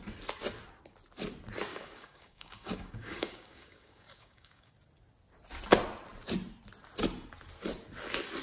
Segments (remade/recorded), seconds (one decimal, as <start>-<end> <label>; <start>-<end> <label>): 0.0-1.7 recorded; 1.7-4.7 remade; 4.7-8.4 recorded

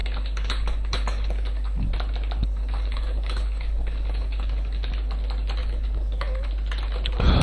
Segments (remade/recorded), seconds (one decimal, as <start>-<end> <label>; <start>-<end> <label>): 0.0-1.9 remade; 1.9-2.4 recorded; 2.4-4.9 remade; 4.9-5.6 recorded; 5.6-6.5 remade; 6.5-7.4 recorded

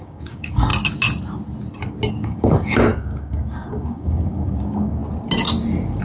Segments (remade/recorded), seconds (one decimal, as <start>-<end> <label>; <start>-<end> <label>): 0.0-0.7 remade; 0.7-2.1 recorded; 2.1-5.0 remade; 5.0-6.0 recorded

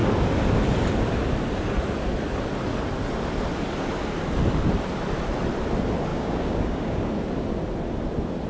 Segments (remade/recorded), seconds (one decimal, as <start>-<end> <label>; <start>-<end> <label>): 0.0-6.1 recorded; 6.1-7.1 remade; 7.1-8.5 recorded